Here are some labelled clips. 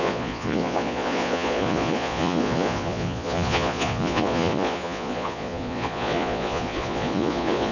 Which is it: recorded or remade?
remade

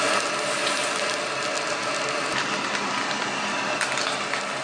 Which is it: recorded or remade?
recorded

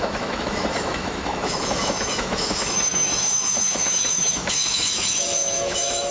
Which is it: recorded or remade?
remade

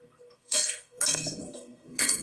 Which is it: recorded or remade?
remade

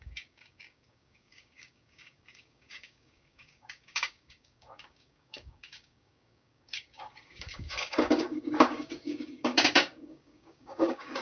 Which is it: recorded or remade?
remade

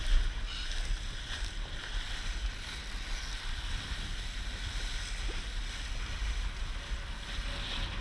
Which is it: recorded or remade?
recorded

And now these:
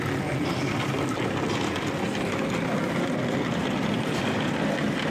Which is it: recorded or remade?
recorded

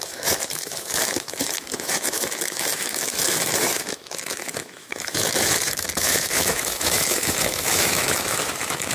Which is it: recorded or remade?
remade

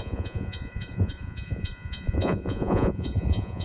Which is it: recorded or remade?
remade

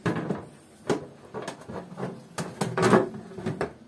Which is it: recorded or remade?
recorded